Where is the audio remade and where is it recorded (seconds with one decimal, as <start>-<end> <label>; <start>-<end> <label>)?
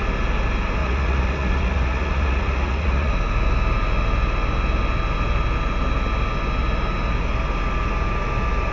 0.0-0.8 recorded; 0.8-3.1 remade; 3.1-8.7 recorded